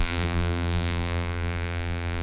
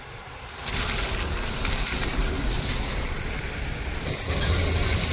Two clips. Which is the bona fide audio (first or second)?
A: second